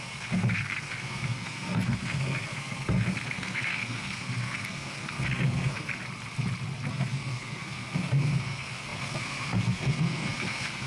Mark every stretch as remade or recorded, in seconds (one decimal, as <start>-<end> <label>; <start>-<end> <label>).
0.0-5.9 remade; 5.9-6.9 recorded; 6.9-10.9 remade